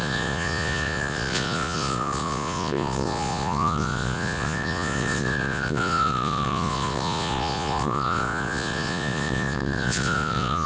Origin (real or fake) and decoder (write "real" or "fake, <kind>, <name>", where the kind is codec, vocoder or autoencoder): fake, vocoder, Vocos